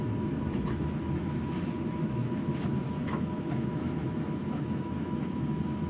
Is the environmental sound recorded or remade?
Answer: remade